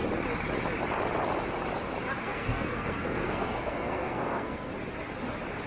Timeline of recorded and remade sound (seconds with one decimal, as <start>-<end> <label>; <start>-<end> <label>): 0.0-2.2 recorded; 2.2-4.7 remade; 4.7-5.7 recorded